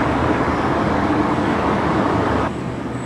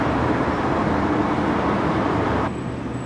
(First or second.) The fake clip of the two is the first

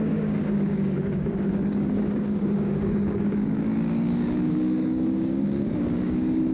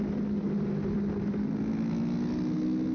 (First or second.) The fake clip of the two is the first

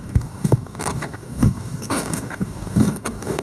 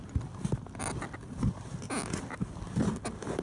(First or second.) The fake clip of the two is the first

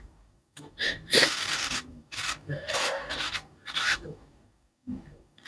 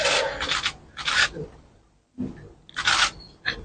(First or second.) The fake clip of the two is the first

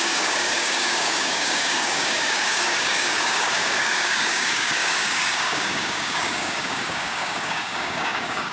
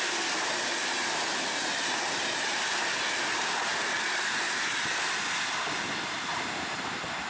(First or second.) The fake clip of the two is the first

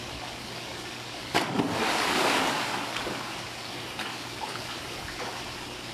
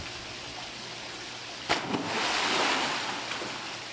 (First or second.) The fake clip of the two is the first